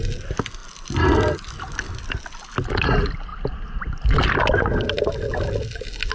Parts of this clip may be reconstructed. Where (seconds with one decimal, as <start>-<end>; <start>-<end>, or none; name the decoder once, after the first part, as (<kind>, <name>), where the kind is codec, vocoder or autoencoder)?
none